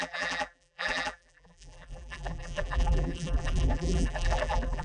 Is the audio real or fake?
fake